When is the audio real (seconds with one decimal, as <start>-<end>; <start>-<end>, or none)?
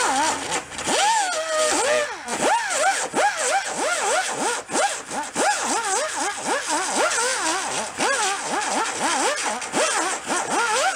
0.0-11.0